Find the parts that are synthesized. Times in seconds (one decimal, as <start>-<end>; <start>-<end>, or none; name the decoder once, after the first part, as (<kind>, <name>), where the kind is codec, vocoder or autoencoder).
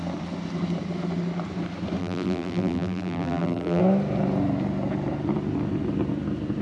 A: 2.0-3.8 (vocoder, BigVGAN v2)